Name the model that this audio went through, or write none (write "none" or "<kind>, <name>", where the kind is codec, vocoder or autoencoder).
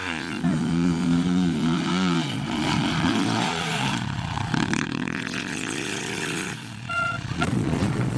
vocoder, Vocos